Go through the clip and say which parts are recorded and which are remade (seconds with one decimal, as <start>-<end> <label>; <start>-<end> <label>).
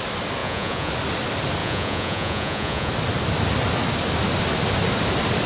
0.0-0.4 recorded; 0.4-0.9 remade; 0.9-1.6 recorded; 1.6-2.9 remade; 2.9-5.5 recorded